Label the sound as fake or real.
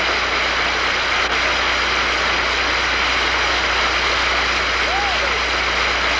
real